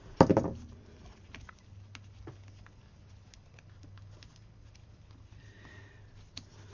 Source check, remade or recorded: recorded